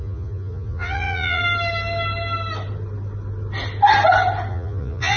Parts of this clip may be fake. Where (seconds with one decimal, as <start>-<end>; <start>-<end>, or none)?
0.0-1.4; 4.5-5.2